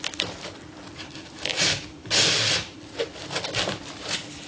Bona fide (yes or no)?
yes